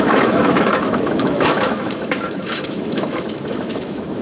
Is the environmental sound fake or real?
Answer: fake